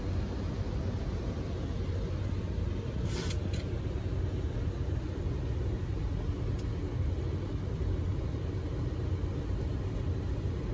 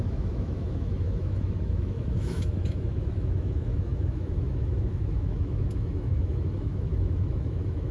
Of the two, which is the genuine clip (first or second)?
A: first